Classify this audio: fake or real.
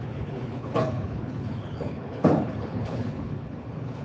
fake